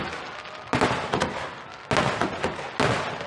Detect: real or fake real